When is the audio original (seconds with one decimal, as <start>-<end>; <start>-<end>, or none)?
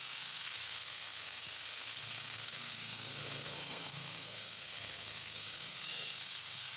none